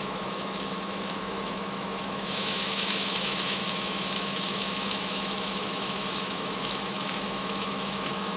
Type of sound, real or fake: fake